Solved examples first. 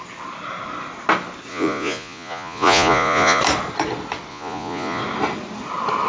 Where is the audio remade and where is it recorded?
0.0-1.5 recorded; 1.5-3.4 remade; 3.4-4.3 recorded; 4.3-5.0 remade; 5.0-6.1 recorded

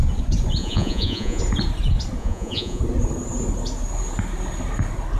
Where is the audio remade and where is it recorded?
0.0-0.6 recorded; 0.6-1.4 remade; 1.4-2.2 recorded; 2.2-2.8 remade; 2.8-5.2 recorded

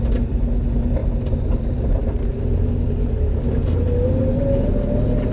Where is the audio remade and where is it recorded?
0.0-5.3 recorded

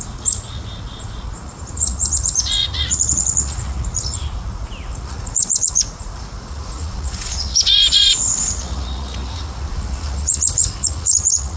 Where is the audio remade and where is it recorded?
0.0-11.6 remade

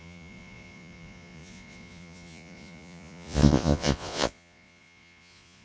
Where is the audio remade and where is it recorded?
0.0-5.6 remade

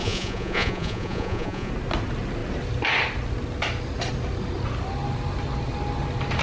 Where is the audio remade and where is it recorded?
0.0-1.7 remade; 1.7-6.4 recorded

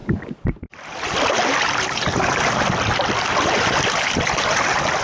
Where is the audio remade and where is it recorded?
0.0-5.0 recorded